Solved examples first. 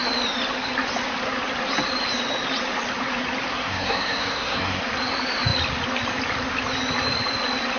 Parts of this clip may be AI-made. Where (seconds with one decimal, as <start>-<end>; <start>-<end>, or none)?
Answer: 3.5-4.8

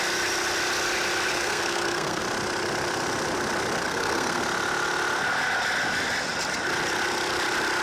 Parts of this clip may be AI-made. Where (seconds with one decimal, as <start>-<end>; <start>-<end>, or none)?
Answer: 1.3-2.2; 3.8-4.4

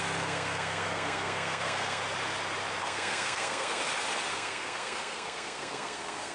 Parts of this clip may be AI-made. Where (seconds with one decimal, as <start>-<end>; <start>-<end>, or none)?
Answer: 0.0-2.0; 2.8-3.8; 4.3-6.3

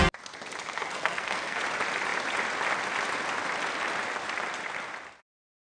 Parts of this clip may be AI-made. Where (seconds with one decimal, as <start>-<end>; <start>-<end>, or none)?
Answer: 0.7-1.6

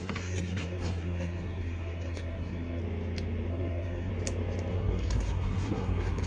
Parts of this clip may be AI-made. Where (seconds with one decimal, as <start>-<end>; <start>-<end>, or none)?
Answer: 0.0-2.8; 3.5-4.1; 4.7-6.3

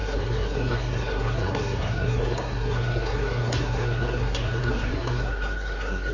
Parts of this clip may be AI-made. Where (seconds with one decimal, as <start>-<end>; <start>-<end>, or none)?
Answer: 0.0-6.1